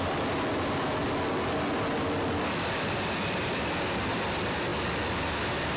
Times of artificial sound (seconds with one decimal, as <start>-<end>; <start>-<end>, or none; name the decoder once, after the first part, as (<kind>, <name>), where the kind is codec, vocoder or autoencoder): none